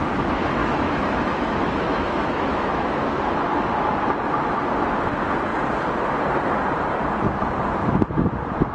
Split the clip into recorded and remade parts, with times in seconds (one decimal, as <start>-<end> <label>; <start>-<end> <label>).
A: 0.0-0.6 recorded; 0.6-3.0 remade; 3.0-8.7 recorded